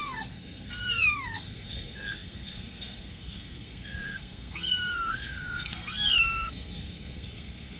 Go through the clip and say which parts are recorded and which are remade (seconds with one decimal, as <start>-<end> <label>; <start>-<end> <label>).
0.0-7.8 remade